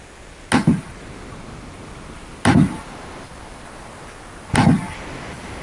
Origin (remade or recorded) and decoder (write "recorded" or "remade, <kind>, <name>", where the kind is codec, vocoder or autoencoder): recorded